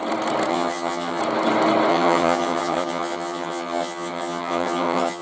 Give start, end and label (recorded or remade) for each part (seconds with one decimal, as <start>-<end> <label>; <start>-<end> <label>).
0.0-0.5 recorded; 0.5-1.2 remade; 1.2-1.9 recorded; 1.9-5.2 remade